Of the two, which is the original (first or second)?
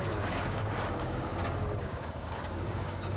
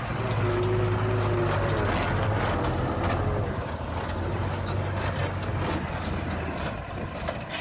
second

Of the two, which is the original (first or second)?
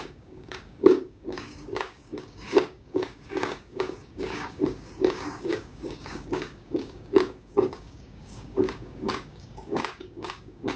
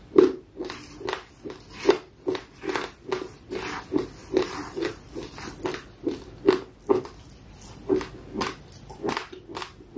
second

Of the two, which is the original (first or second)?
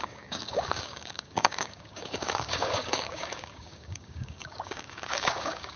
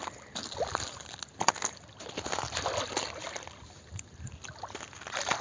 second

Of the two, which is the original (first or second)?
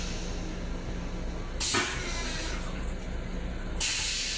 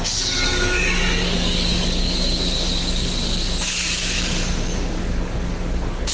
first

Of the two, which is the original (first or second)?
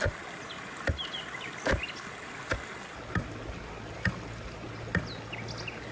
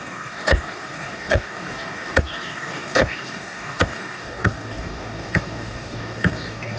first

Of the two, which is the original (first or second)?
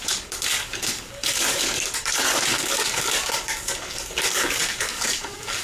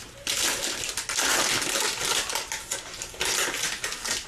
second